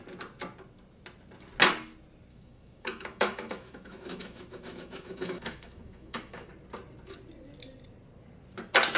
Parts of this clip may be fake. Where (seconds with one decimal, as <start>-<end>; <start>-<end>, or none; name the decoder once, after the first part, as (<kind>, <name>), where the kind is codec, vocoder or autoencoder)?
2.3-6.5 (autoencoder, DAC-VAE)